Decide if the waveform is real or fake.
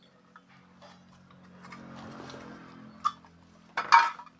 real